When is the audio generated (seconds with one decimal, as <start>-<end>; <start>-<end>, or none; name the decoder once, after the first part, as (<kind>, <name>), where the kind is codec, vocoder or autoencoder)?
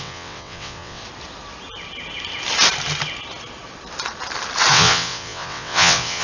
0.0-1.0 (vocoder, WaveNeXt); 4.7-6.2